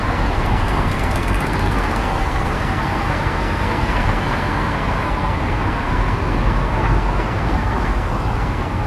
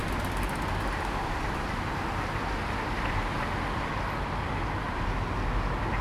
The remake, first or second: first